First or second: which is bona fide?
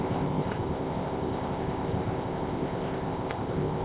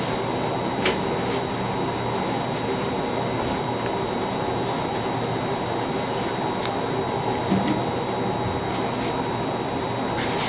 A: second